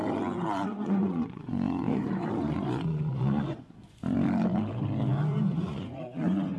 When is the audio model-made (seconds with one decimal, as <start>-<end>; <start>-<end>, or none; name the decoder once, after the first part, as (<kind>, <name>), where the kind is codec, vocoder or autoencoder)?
0.4-4.0 (vocoder, Vocos); 5.3-6.6